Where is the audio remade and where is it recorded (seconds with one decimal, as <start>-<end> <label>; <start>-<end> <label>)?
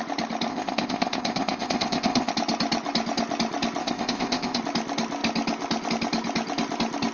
0.0-0.5 recorded; 0.5-2.3 remade; 2.3-3.8 recorded; 3.8-4.6 remade; 4.6-7.1 recorded